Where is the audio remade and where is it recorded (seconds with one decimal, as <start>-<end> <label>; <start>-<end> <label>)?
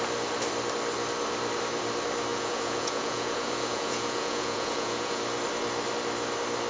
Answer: 0.0-2.3 recorded; 2.3-5.2 remade; 5.2-6.7 recorded